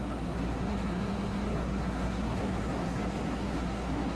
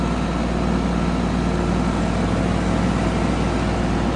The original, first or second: second